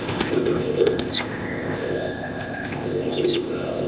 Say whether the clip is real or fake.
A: fake